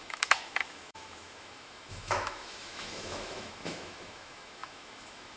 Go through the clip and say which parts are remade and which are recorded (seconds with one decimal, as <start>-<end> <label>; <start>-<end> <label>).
0.0-5.4 remade